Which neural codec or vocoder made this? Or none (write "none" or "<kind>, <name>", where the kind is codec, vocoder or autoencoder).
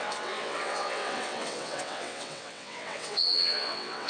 vocoder, WaveNeXt